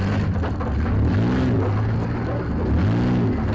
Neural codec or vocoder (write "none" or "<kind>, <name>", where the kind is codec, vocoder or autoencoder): none